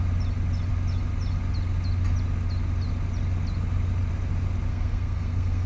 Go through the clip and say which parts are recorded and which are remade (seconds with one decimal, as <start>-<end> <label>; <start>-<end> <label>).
0.0-4.7 recorded; 4.7-5.7 remade